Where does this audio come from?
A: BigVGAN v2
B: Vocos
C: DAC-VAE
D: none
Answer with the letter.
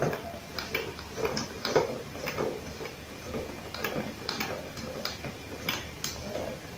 D